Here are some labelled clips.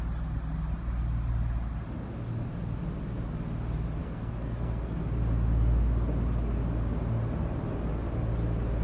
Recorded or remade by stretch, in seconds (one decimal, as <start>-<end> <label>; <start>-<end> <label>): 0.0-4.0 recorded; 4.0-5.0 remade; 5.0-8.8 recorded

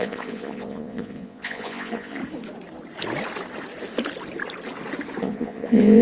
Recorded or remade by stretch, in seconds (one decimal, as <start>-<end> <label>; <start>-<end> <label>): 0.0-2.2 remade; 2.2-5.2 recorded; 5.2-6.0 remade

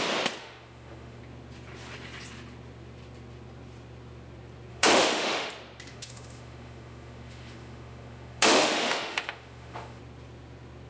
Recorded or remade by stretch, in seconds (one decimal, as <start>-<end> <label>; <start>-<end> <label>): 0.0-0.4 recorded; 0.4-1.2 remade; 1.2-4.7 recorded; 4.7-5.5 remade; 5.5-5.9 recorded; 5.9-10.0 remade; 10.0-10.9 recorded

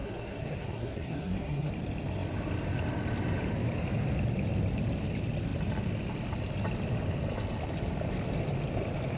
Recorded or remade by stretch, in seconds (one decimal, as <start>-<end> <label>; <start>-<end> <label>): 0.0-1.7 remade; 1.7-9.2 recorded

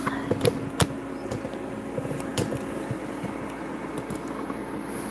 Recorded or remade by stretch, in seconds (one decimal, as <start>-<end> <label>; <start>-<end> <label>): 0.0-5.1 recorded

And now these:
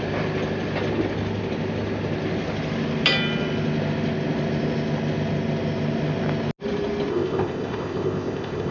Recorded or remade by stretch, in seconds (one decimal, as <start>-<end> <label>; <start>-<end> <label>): 0.0-7.1 recorded; 7.1-8.7 remade

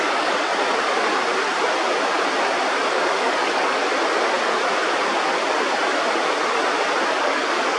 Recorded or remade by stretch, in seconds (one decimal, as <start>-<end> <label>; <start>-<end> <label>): 0.0-0.5 remade; 0.5-2.9 recorded; 2.9-3.8 remade; 3.8-7.1 recorded; 7.1-7.8 remade